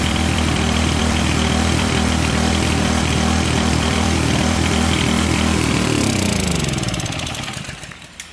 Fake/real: fake